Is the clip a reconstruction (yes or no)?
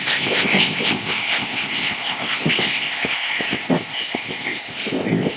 yes